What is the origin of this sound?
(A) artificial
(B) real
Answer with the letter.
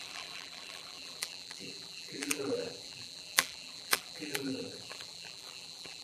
A